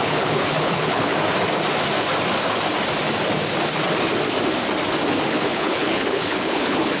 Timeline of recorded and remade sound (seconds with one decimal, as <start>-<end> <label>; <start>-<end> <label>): 0.0-1.1 remade; 1.1-5.3 recorded; 5.3-7.0 remade